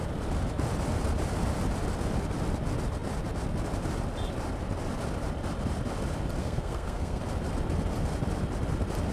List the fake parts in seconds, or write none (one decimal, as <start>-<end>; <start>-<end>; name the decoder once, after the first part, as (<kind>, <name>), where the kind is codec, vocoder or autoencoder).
6.4-7.2 (codec, SNAC)